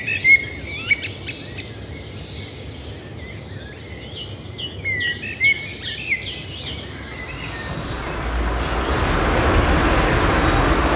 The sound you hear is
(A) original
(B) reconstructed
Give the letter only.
A